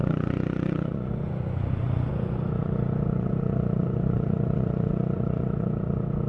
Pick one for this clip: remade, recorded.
remade